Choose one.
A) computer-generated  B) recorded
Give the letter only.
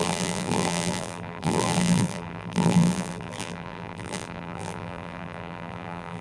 A